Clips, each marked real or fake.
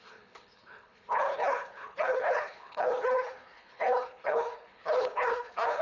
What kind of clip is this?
fake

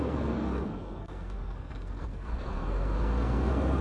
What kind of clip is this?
fake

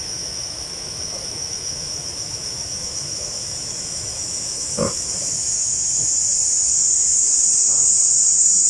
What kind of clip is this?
fake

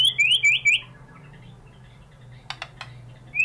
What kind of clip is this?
real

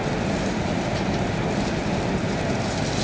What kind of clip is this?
real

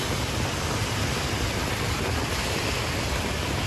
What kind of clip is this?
real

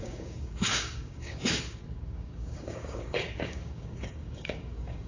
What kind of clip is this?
fake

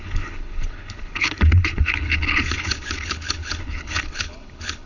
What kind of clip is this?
fake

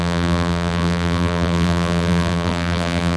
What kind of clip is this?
fake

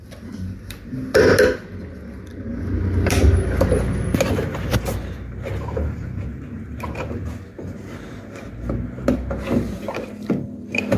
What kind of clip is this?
real